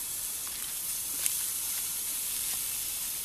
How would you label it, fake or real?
real